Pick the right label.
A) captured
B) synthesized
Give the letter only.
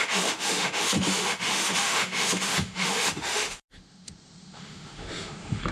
B